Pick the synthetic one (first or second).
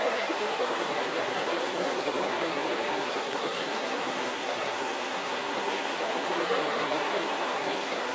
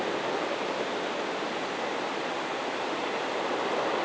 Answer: first